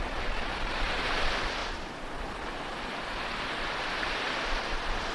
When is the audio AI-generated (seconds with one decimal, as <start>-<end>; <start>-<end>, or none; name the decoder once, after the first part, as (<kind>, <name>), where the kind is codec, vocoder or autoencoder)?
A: 1.6-4.6 (vocoder, BigVGAN v2)